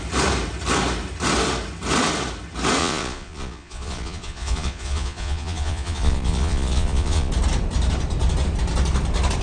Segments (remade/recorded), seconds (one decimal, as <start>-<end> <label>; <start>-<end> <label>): 0.0-2.8 recorded; 2.8-7.3 remade; 7.3-9.4 recorded

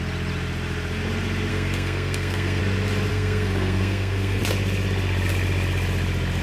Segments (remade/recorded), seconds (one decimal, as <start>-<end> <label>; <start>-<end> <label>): 0.0-1.5 recorded; 1.5-2.6 remade; 2.6-3.1 recorded; 3.1-4.4 remade; 4.4-6.4 recorded

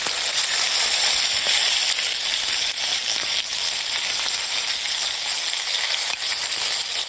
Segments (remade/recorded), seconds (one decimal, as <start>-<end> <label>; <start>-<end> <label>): 0.0-2.1 recorded; 2.1-5.2 remade; 5.2-7.1 recorded

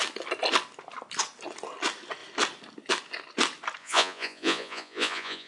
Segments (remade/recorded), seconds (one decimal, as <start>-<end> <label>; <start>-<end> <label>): 0.0-3.8 recorded; 3.8-5.5 remade

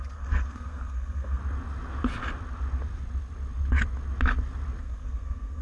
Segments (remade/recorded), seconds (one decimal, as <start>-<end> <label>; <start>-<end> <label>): 0.0-1.4 remade; 1.4-4.8 recorded; 4.8-5.6 remade

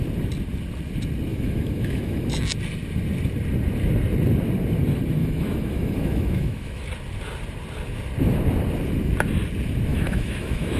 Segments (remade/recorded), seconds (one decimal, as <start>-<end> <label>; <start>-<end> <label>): 0.0-1.3 recorded; 1.3-2.3 remade; 2.3-5.2 recorded; 5.2-6.8 remade; 6.8-9.9 recorded; 9.9-10.8 remade